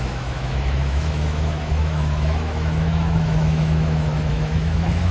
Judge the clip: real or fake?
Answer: fake